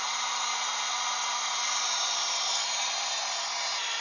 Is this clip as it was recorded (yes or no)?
yes